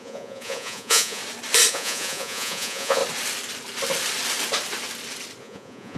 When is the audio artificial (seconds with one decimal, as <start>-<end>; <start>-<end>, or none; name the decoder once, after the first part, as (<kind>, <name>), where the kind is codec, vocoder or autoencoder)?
0.0-1.2 (vocoder, Vocos); 1.7-3.0; 5.4-6.0